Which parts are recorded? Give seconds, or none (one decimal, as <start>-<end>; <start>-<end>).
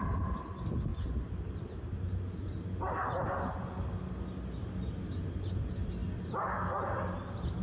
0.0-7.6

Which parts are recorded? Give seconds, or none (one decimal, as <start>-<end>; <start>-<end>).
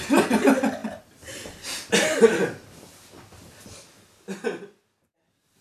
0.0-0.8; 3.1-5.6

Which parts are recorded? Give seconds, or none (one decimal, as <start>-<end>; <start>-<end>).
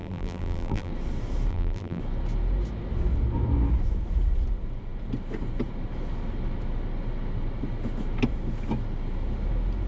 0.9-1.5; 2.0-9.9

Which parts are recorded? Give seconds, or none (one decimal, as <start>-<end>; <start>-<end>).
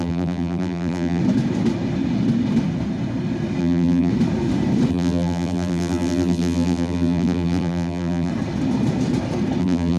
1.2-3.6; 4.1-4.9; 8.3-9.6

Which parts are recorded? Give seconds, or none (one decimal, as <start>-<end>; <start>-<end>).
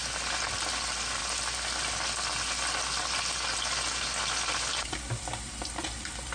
1.2-4.7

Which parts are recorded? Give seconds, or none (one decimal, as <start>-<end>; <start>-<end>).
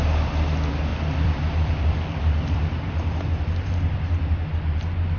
0.0-0.9; 4.0-5.2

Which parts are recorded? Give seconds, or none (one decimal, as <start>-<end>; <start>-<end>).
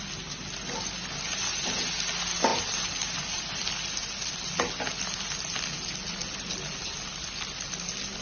0.0-8.2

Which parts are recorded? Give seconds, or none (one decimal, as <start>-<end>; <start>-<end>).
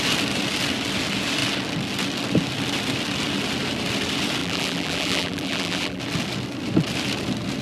0.0-4.4; 6.0-7.6